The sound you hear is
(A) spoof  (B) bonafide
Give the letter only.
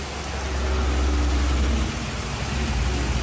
B